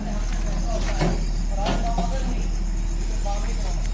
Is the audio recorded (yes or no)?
yes